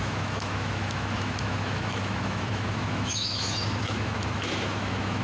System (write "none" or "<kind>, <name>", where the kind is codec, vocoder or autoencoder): autoencoder, DAC-VAE